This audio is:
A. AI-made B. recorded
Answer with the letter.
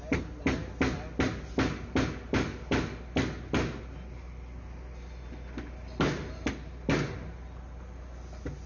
B